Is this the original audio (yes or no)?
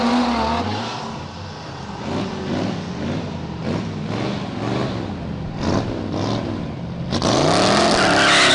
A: yes